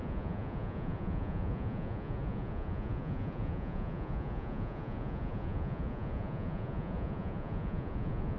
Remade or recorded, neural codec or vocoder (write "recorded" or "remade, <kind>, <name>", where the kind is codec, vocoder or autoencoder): remade, vocoder, Vocos